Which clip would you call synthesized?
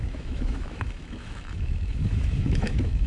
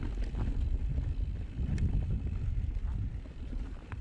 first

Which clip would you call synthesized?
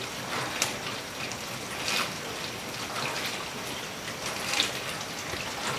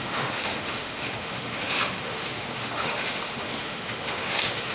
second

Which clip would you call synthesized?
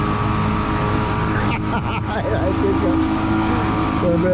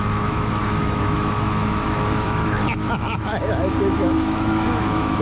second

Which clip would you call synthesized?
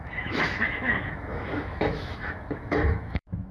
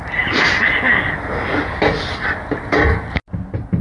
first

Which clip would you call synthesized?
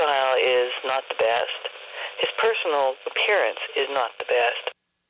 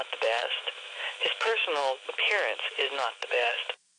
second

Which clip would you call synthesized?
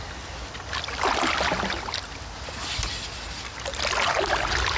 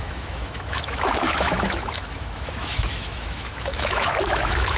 second